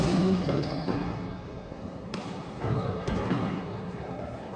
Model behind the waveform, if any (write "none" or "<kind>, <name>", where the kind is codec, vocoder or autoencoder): codec, SNAC